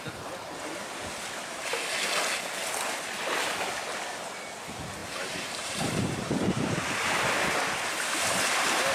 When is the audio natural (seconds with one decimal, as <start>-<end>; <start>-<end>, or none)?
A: 0.0-5.0; 6.6-8.9